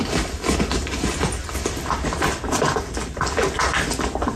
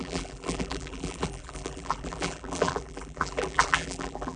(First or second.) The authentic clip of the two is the first